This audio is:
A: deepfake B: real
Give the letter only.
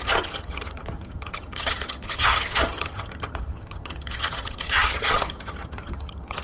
A